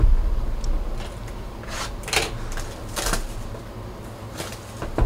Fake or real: real